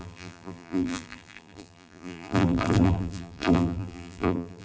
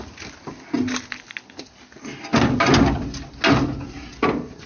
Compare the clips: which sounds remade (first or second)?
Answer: first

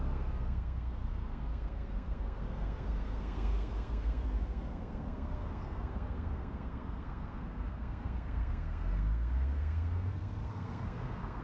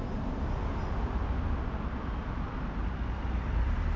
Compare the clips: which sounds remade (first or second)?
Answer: first